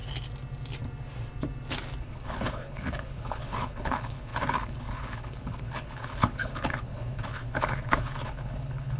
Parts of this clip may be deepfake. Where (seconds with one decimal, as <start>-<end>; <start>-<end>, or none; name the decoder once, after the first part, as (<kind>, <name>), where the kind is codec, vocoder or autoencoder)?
2.0-9.0 (codec, HILCodec)